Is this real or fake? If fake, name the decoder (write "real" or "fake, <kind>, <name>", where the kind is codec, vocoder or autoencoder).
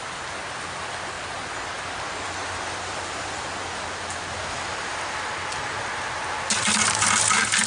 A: real